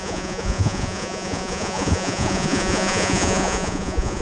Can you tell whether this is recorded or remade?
remade